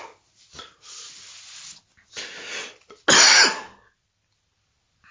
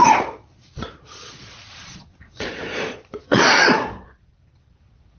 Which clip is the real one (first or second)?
first